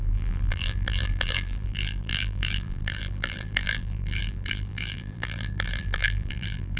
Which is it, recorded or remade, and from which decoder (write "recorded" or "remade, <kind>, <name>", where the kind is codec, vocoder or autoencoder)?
remade, vocoder, BigVGAN v2